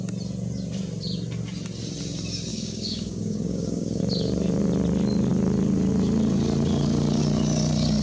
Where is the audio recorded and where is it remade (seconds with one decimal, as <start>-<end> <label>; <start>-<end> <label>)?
0.0-2.5 recorded; 2.5-4.0 remade; 4.0-8.0 recorded